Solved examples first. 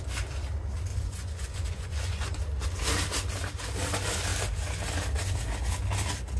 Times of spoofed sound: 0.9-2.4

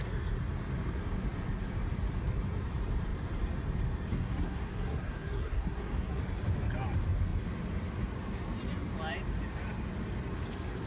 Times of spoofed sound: 4.1-6.2

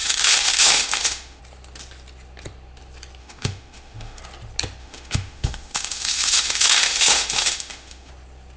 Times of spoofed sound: 0.0-1.4; 3.2-4.2; 4.8-8.1

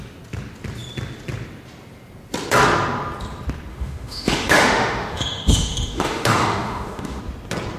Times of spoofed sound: 3.7-7.2

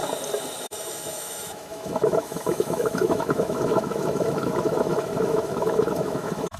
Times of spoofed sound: 0.6-6.6

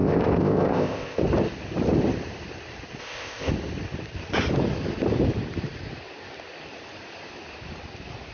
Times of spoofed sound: 0.0-1.2; 3.0-3.5

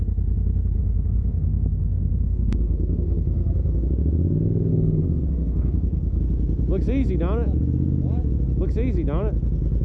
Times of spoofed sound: 0.8-3.9; 4.7-6.2

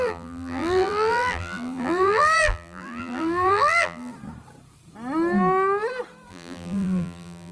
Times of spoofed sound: 0.0-4.1; 6.3-7.5